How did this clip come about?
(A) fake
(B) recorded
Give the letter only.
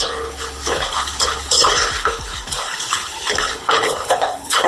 A